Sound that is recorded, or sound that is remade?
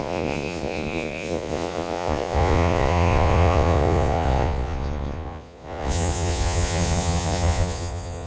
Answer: remade